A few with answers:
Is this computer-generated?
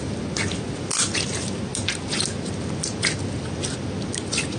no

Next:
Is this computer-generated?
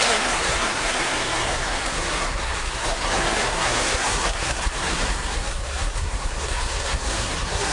yes